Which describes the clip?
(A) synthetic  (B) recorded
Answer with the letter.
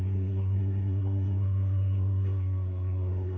A